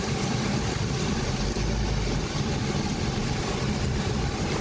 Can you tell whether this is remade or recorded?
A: recorded